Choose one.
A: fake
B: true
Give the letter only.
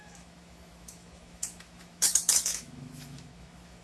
A